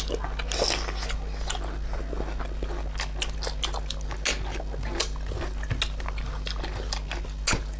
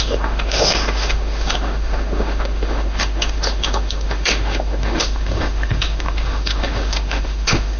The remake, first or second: second